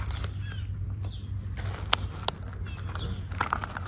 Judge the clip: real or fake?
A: real